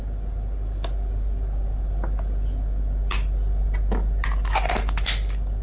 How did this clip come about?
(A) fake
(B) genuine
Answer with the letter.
B